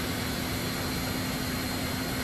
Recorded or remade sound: recorded